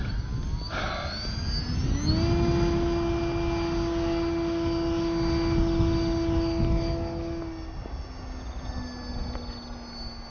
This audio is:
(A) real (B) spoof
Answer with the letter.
A